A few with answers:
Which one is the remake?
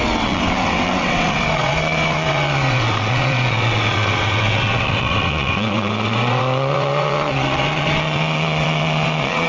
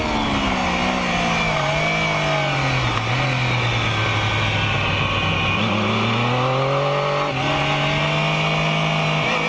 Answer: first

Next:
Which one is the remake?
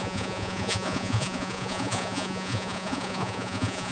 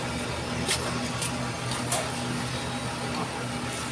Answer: first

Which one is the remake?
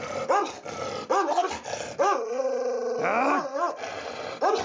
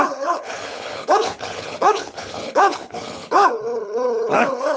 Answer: second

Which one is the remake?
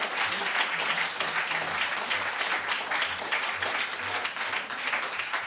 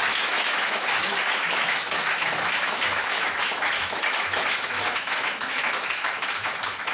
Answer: second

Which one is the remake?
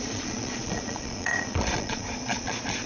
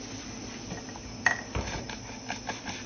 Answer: first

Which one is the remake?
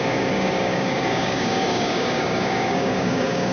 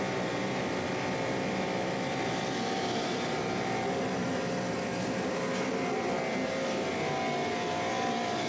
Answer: first